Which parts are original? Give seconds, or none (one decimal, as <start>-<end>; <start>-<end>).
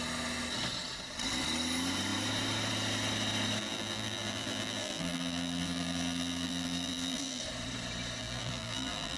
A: 0.0-3.6; 7.4-8.2